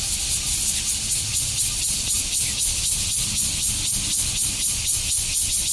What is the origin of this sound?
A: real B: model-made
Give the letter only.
A